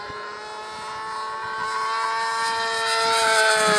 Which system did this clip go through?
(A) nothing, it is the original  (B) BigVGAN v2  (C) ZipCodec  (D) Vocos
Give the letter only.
A